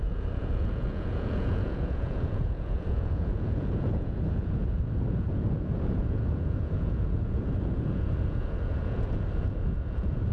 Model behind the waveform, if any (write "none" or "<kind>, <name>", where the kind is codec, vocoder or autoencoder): vocoder, Vocos